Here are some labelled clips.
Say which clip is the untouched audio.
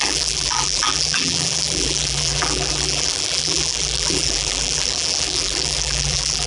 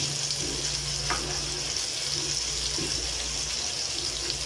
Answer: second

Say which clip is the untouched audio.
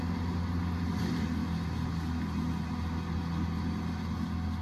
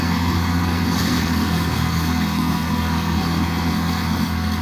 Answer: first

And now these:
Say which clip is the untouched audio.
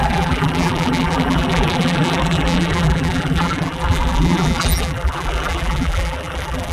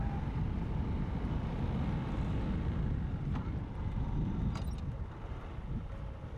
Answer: second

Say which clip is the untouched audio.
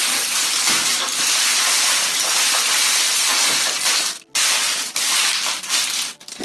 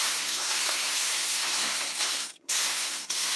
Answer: first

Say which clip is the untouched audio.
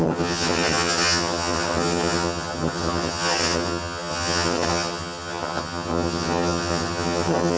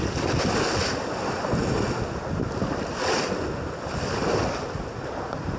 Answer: second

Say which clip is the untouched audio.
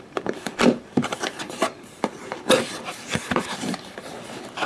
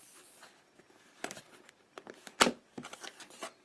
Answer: second